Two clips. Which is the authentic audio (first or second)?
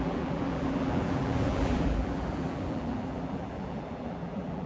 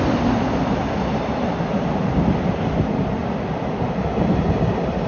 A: second